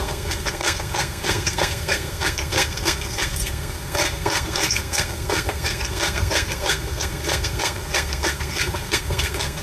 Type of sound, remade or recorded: remade